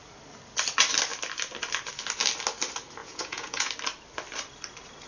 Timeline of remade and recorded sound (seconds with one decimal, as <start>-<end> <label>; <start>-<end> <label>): 0.0-3.0 recorded; 3.0-3.7 remade; 3.7-5.1 recorded